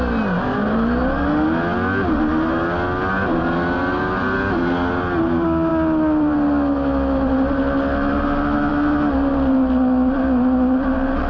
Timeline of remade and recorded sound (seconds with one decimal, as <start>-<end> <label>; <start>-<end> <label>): 0.0-11.3 recorded